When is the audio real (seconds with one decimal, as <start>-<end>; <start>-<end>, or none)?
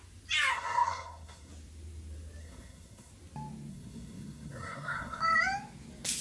0.0-0.5; 1.5-2.4; 3.1-3.7; 5.2-6.2